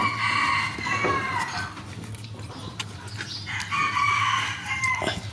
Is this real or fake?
real